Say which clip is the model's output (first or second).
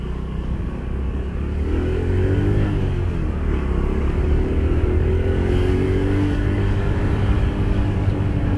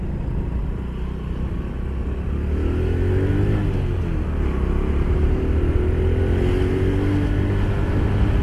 first